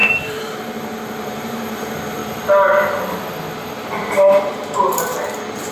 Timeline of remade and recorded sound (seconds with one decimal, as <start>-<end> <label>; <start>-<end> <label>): 0.0-2.2 remade; 2.2-3.9 recorded; 3.9-5.7 remade